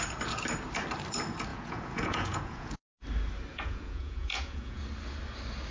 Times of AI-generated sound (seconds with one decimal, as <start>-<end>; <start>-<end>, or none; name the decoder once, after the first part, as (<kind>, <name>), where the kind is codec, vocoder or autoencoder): 1.5-2.9 (vocoder, Vocos); 3.5-4.8